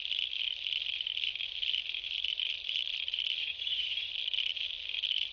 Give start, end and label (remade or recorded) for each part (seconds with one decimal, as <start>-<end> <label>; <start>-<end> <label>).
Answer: 0.0-3.4 recorded; 3.4-4.1 remade; 4.1-5.3 recorded